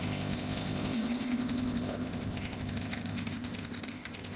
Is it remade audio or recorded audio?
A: remade